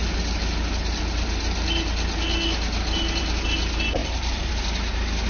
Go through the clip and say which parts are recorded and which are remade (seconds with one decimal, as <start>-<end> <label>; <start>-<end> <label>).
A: 0.0-4.0 recorded; 4.0-4.5 remade; 4.5-5.3 recorded